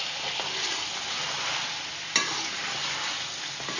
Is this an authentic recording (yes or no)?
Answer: yes